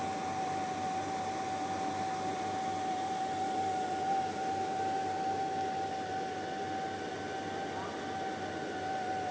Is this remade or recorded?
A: recorded